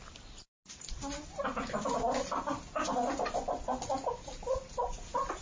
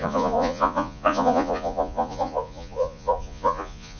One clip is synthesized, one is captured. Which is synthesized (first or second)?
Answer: second